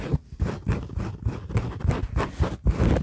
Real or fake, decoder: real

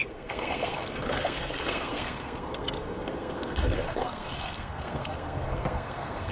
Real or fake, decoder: fake, codec, SNAC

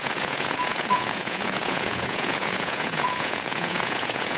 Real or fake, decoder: fake, vocoder, Vocos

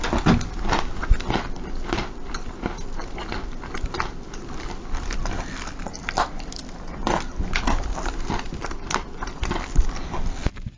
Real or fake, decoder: real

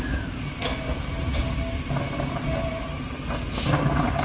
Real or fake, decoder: real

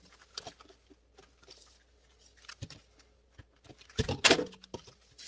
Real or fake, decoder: real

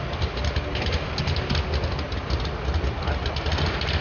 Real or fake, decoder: real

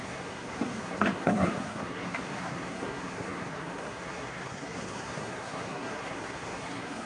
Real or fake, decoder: fake, codec, SNAC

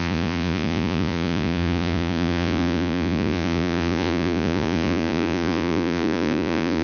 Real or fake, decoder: fake, vocoder, Vocos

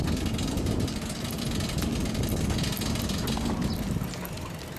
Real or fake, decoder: real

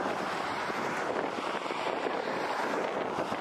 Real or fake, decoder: real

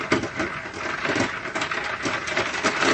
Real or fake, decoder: real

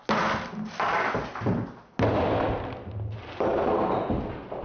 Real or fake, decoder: real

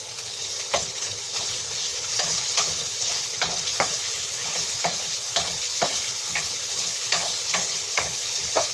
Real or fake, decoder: fake, codec, HILCodec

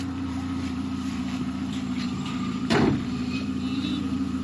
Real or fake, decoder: fake, vocoder, BigVGAN v2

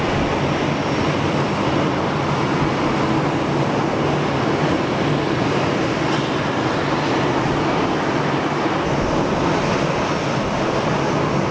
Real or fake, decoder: real